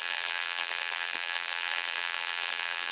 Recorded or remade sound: remade